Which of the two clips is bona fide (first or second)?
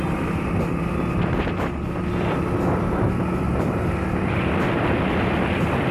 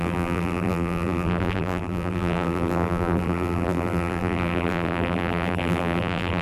first